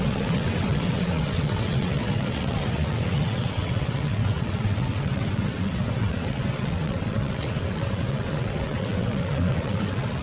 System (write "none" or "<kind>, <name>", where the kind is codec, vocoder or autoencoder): vocoder, WaveNeXt